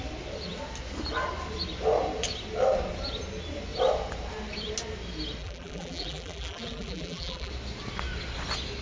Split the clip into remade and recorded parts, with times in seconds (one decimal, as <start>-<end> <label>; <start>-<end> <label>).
0.0-5.4 recorded; 5.4-7.5 remade; 7.5-8.8 recorded